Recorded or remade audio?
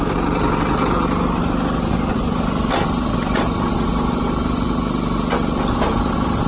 recorded